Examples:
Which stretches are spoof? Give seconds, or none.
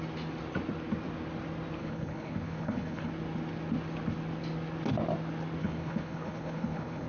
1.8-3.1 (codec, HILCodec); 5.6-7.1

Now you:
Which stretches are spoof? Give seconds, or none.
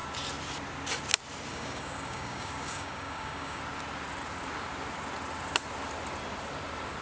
1.5-3.6 (codec, DAC)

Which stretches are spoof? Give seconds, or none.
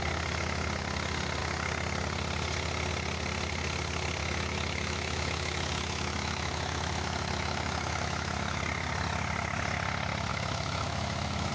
4.2-8.6 (autoencoder, DAC-VAE); 10.3-11.5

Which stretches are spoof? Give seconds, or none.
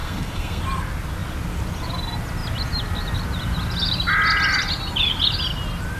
0.0-0.6 (codec, SNAC)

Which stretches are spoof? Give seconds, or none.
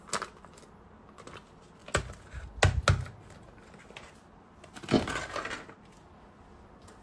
none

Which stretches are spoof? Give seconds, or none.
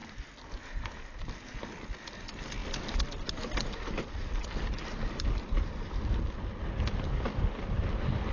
none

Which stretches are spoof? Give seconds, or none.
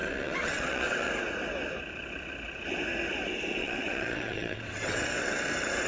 0.0-1.1 (vocoder, WaveNeXt); 3.6-5.9